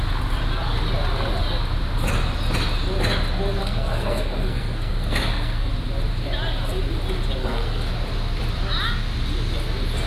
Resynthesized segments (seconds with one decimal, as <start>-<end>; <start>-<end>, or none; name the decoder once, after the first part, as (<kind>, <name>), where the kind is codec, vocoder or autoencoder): 3.6-5.7 (codec, SNAC); 7.4-7.9